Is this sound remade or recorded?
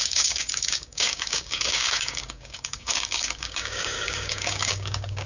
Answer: remade